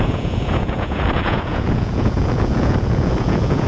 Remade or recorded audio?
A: remade